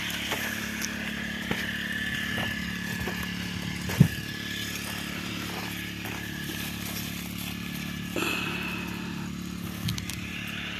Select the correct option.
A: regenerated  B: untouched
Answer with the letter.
B